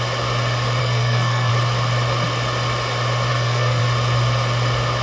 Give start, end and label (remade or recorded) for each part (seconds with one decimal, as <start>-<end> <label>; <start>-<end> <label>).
0.0-0.8 recorded; 0.8-1.5 remade; 1.5-3.3 recorded; 3.3-3.8 remade; 3.8-5.0 recorded